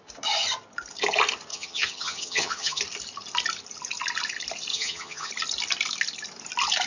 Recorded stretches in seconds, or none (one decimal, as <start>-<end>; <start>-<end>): 0.0-1.5; 2.8-4.7; 5.3-6.9